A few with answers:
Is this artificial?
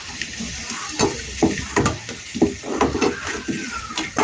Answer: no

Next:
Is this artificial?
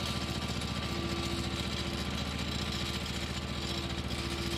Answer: no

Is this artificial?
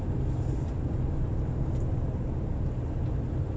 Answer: no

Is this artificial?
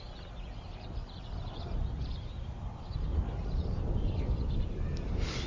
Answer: no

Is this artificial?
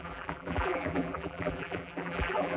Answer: yes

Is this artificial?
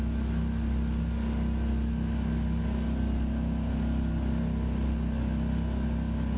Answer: no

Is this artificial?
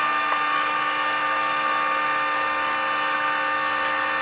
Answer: no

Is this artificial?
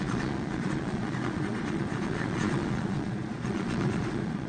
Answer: yes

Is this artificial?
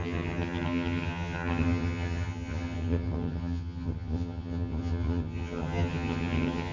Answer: yes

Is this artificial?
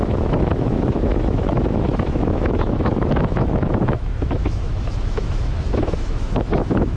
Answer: yes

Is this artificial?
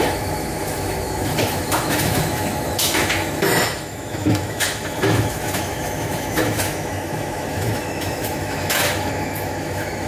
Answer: yes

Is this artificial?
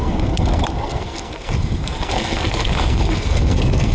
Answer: yes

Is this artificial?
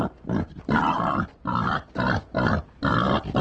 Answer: no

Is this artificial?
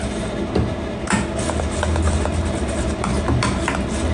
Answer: no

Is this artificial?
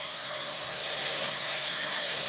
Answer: yes